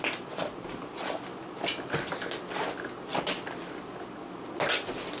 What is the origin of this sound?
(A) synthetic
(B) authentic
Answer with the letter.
B